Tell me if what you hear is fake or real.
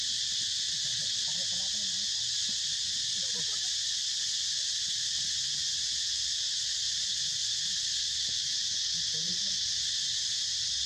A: real